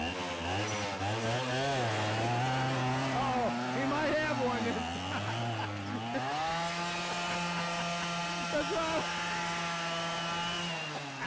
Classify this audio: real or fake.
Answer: real